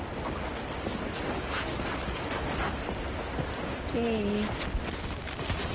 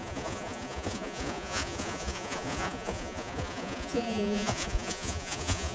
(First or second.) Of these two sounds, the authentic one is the first